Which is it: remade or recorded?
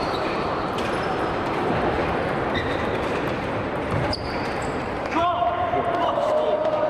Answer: remade